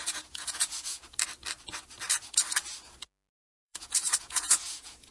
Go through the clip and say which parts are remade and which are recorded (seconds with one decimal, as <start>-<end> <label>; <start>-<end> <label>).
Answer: 0.0-1.0 remade; 1.0-3.3 recorded; 3.3-5.1 remade

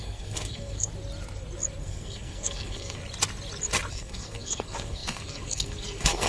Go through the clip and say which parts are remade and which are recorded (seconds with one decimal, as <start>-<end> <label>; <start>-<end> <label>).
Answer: 0.0-0.9 remade; 0.9-1.8 recorded; 1.8-3.0 remade; 3.0-3.9 recorded; 3.9-6.3 remade

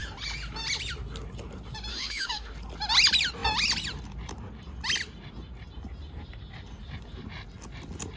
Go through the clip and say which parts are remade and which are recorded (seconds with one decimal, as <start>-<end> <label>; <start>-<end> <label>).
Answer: 0.0-1.9 recorded; 1.9-2.5 remade; 2.5-8.2 recorded

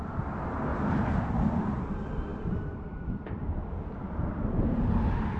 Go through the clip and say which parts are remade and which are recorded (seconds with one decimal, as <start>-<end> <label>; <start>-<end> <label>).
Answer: 0.0-0.7 recorded; 0.7-1.3 remade; 1.3-2.3 recorded; 2.3-5.4 remade